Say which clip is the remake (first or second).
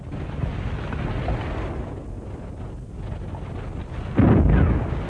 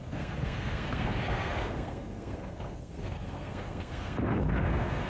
second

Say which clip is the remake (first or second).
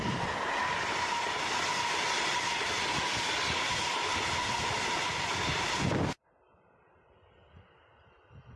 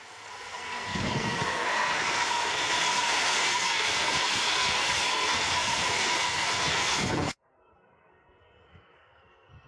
second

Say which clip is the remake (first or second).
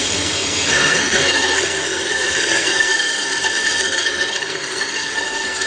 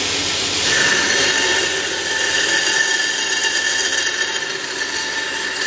first